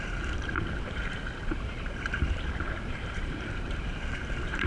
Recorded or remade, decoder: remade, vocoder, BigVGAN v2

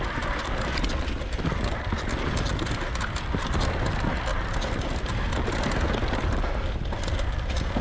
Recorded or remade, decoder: recorded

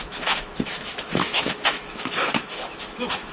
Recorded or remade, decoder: remade, autoencoder, DAC-VAE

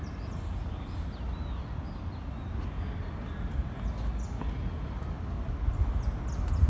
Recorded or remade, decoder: recorded